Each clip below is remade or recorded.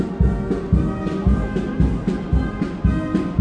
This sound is recorded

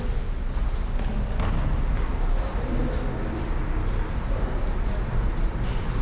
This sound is recorded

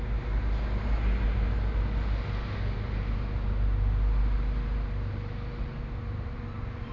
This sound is recorded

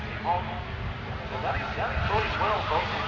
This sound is recorded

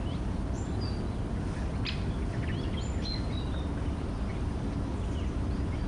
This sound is recorded